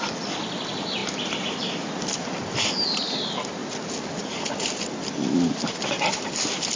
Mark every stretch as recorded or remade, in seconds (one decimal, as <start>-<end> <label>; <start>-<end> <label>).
0.0-6.8 recorded